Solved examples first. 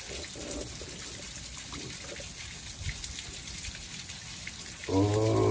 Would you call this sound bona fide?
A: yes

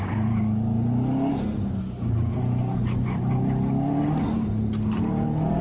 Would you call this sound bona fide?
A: yes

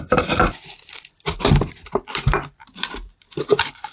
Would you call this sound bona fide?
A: yes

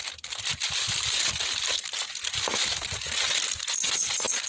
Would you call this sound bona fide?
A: yes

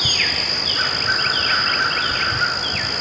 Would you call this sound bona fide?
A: yes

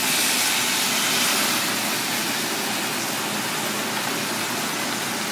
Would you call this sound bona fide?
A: yes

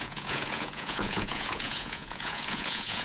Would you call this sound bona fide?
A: no